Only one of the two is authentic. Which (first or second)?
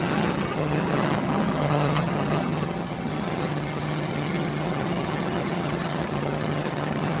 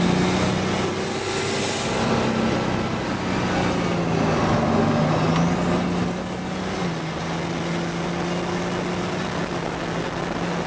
second